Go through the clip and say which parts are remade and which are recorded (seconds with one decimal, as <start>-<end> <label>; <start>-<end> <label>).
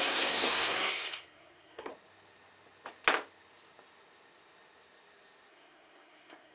0.0-1.9 remade; 1.9-5.5 recorded; 5.5-6.5 remade